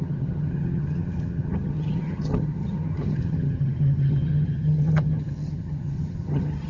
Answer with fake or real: fake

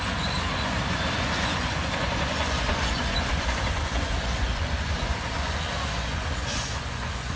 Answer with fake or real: fake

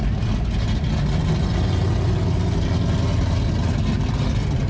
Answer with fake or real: real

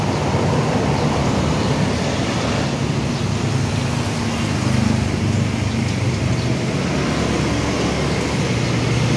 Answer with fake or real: real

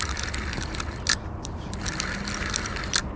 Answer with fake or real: real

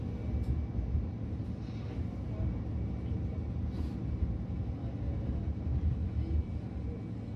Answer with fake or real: real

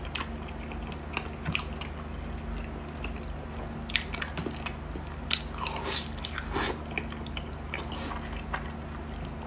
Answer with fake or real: real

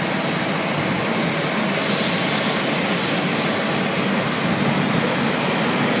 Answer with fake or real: real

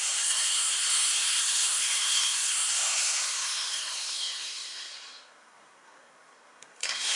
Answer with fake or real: fake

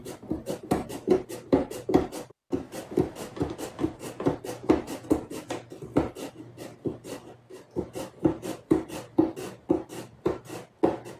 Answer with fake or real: real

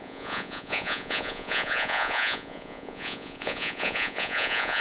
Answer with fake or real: fake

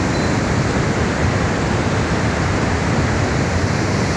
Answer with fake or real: fake